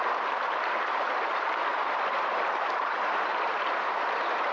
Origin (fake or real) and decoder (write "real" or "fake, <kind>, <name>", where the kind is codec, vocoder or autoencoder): fake, vocoder, BigVGAN v2